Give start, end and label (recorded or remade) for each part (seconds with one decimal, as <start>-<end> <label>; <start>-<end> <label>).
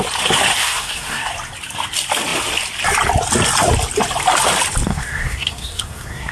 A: 0.0-0.6 recorded; 0.6-1.3 remade; 1.3-4.9 recorded; 4.9-6.3 remade